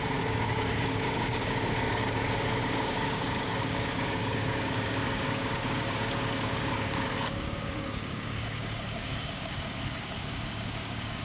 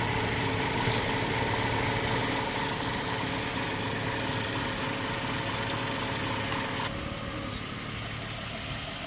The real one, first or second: second